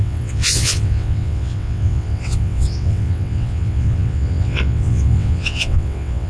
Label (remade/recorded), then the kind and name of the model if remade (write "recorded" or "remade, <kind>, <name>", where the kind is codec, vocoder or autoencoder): remade, vocoder, WaveNeXt